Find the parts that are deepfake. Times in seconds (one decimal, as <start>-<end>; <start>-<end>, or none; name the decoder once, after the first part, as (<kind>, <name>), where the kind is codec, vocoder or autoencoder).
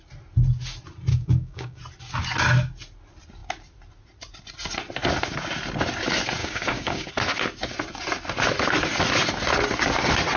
1.1-1.8 (codec, DAC); 6.4-7.1